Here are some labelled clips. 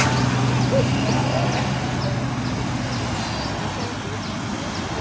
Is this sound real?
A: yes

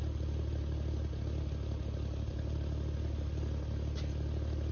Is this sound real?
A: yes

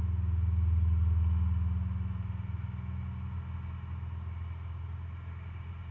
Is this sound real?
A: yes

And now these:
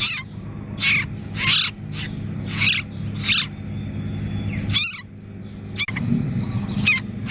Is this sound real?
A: yes